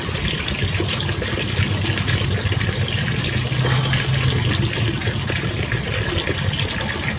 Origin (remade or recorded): recorded